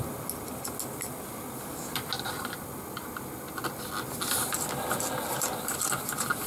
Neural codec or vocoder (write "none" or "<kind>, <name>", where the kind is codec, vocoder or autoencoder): none